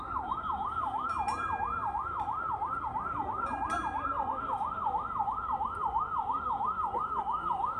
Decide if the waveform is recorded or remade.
recorded